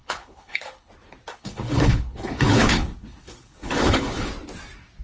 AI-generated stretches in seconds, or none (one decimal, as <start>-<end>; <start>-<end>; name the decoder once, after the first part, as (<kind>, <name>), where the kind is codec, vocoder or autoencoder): 0.0-0.9 (codec, HILCodec); 1.3-4.3